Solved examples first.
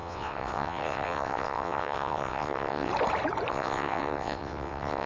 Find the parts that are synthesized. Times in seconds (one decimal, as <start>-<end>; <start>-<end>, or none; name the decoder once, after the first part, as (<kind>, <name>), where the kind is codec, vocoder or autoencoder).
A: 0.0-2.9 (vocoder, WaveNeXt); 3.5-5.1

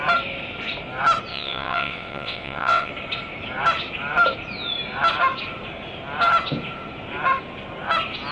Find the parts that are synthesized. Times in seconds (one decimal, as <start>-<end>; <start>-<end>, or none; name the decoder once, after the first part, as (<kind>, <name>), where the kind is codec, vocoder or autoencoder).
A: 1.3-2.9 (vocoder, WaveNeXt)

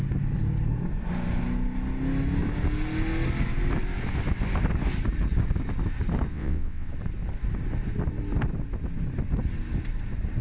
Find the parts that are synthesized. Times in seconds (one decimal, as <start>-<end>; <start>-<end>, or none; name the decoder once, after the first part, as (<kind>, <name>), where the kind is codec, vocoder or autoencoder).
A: 6.3-6.9 (vocoder, WaveNeXt)

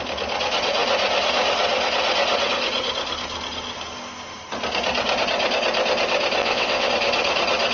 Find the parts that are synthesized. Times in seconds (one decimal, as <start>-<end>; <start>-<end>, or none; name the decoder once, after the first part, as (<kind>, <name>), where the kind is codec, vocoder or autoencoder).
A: 6.4-6.9 (vocoder, WaveNeXt)